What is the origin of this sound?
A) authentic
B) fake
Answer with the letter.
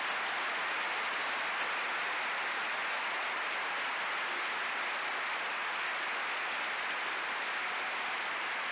A